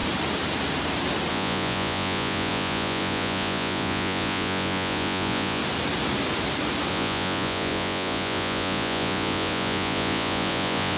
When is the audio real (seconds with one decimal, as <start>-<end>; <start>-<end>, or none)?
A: 0.0-1.3; 5.6-6.9